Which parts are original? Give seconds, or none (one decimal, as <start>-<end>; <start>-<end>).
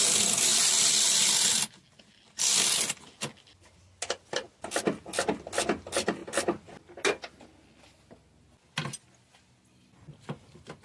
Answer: 0.0-10.8